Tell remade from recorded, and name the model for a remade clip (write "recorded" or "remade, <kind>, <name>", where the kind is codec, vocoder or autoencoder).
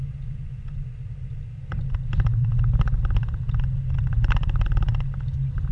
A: recorded